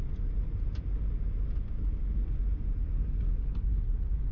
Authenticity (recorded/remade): recorded